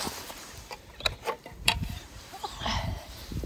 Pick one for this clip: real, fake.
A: fake